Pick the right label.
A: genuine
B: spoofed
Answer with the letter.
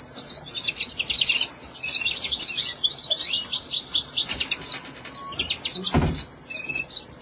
A